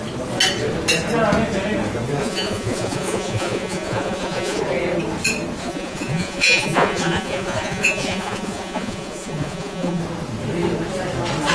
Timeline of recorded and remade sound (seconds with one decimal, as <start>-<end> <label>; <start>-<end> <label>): 0.0-2.2 recorded; 2.2-4.6 remade; 4.6-5.6 recorded; 5.6-10.0 remade; 10.0-11.5 recorded